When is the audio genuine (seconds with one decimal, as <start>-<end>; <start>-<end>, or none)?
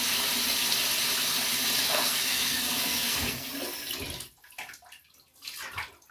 0.0-1.8; 3.5-6.1